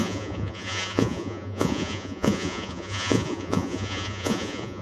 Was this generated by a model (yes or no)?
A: yes